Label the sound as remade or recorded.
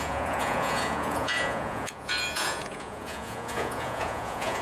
remade